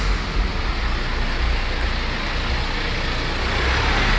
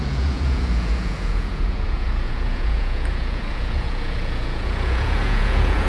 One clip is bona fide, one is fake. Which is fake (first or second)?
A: second